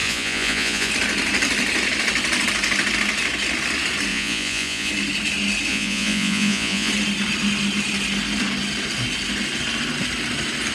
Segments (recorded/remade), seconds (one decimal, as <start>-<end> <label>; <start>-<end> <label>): 0.0-0.9 remade; 0.9-4.1 recorded; 4.1-4.9 remade; 4.9-5.7 recorded; 5.7-6.9 remade; 6.9-10.7 recorded